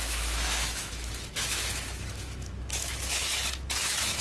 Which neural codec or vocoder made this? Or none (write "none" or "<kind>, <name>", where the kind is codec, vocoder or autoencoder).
autoencoder, DAC-VAE